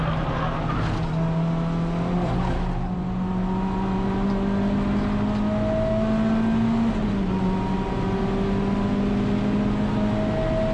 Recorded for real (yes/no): yes